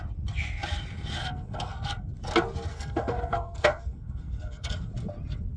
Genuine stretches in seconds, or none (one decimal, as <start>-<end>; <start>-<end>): 0.0-1.2; 2.1-2.7; 4.9-5.6